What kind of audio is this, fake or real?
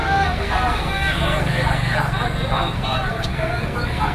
fake